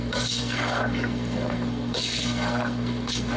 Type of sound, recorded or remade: remade